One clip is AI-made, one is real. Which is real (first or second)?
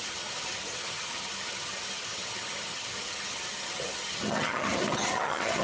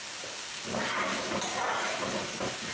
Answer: second